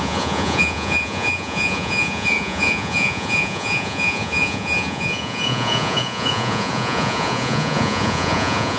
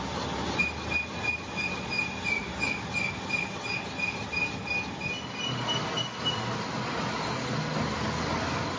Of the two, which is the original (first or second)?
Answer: second